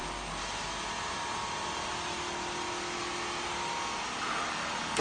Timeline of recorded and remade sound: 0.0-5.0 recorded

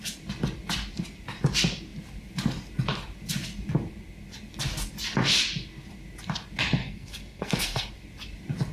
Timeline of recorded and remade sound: 0.0-6.8 recorded; 6.8-7.9 remade; 7.9-8.7 recorded

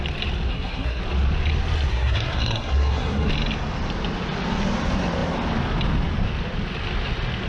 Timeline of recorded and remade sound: 0.0-0.5 recorded; 0.5-1.0 remade; 1.0-1.9 recorded; 1.9-3.3 remade; 3.3-7.5 recorded